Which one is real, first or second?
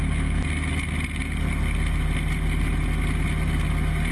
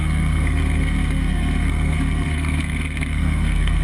first